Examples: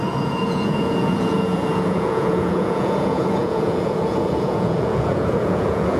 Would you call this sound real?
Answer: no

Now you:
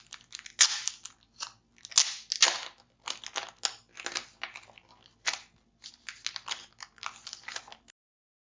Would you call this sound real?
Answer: yes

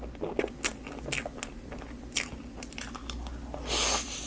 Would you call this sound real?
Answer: yes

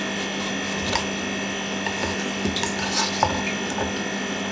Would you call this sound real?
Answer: yes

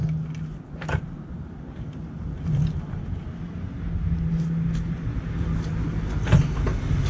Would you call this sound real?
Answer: yes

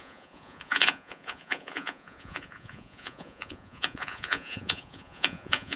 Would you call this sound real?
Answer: no